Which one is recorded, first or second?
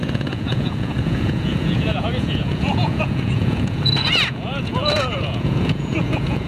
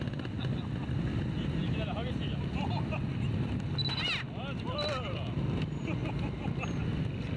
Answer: second